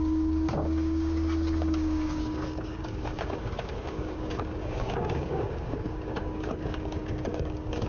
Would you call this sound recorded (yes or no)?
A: no